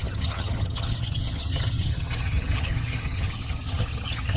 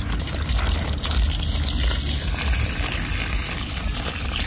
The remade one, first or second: first